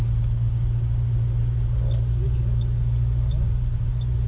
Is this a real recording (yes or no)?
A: yes